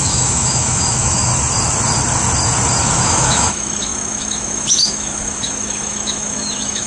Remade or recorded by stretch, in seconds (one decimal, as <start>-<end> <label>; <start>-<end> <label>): 0.0-1.3 remade; 1.3-2.9 recorded; 2.9-6.9 remade